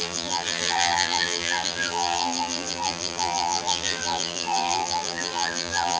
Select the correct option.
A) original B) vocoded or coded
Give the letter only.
B